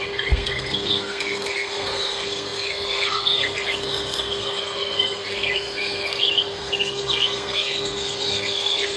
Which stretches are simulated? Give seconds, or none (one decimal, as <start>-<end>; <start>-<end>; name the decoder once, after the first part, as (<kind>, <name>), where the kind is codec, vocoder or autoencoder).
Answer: 0.0-9.0 (codec, SNAC)